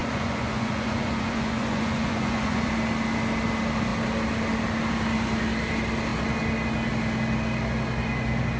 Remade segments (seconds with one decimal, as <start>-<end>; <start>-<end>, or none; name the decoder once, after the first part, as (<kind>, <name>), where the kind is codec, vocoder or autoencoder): 0.0-2.7 (vocoder, Vocos)